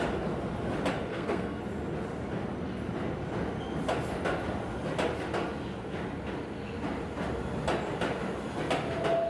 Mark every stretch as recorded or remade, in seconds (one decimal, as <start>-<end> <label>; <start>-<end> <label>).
0.0-1.1 recorded; 1.1-1.6 remade; 1.6-9.3 recorded